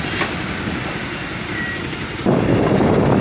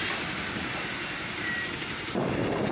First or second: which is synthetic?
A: first